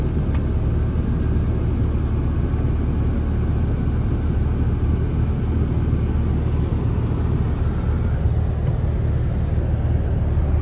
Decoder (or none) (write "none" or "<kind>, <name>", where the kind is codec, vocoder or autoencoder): none